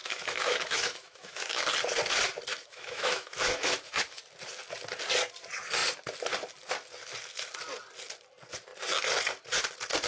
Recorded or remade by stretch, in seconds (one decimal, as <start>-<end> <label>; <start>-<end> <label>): 0.0-1.6 remade; 1.6-2.5 recorded; 2.5-4.2 remade; 4.2-10.1 recorded